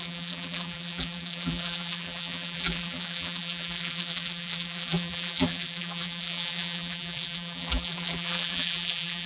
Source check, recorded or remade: remade